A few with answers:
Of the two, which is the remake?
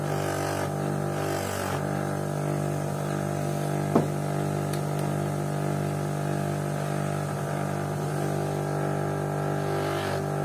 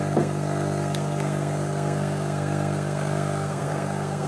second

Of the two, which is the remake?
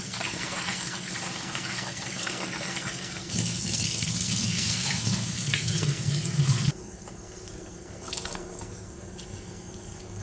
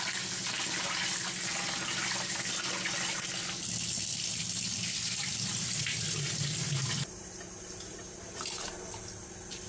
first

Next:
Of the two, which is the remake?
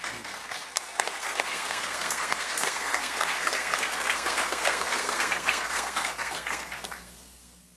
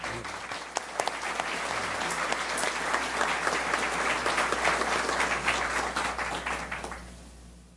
first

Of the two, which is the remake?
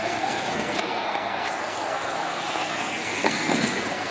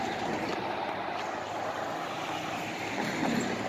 first